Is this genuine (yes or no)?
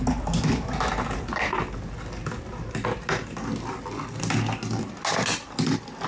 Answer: yes